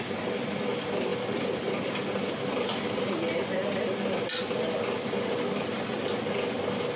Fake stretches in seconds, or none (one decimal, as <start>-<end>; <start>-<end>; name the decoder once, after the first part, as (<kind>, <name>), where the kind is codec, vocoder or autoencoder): 1.1-5.3 (vocoder, BigVGAN v2)